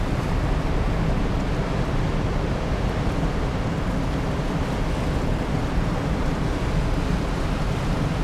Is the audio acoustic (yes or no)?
yes